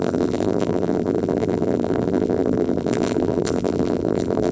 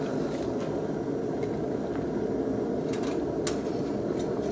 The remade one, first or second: first